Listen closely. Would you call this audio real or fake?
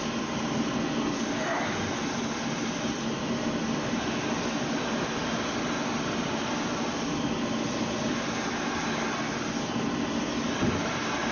real